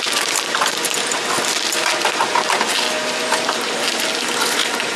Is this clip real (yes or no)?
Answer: yes